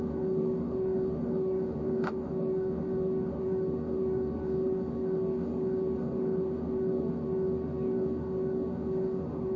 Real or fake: fake